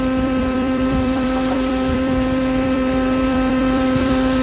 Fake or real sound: fake